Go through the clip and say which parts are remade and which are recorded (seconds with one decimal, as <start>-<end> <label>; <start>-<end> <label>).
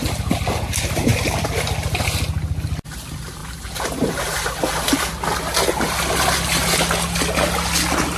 0.0-3.4 recorded; 3.4-4.5 remade; 4.5-8.2 recorded